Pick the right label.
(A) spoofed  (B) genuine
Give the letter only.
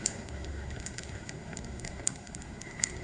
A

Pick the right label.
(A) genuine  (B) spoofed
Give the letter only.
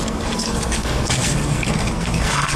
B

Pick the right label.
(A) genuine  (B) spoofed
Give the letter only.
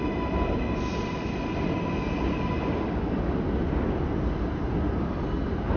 A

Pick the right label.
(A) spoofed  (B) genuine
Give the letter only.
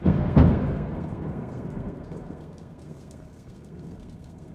A